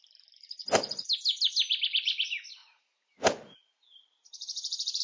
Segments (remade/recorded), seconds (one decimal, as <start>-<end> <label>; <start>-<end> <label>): 0.0-2.6 recorded; 2.6-5.0 remade